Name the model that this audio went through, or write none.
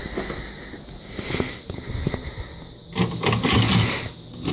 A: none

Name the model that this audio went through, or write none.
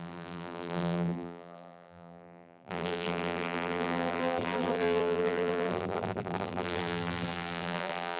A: vocoder, BigVGAN v2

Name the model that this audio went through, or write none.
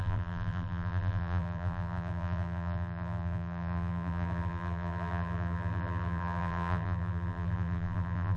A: vocoder, BigVGAN v2